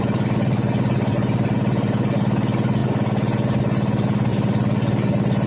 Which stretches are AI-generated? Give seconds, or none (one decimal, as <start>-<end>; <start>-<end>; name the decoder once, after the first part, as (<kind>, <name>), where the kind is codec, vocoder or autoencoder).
none